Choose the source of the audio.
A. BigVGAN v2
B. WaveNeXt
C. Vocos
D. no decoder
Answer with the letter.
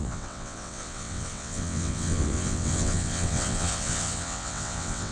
B